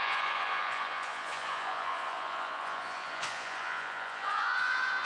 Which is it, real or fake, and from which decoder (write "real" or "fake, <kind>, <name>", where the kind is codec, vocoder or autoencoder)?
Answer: fake, vocoder, Vocos